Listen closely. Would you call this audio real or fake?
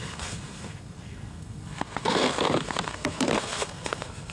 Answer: fake